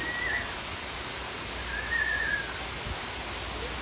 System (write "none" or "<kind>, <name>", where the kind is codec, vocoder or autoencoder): none